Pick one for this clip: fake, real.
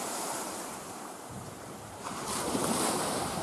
fake